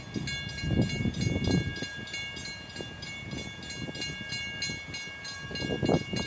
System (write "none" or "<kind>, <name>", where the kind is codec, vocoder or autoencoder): none